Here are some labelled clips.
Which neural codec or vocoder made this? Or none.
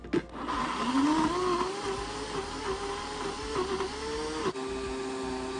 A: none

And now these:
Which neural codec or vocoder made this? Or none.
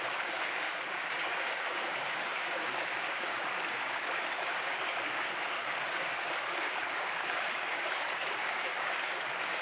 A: codec, DAC